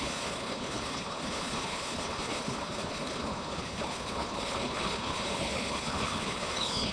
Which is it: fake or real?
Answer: fake